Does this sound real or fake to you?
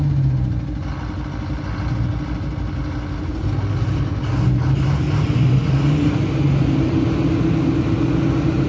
real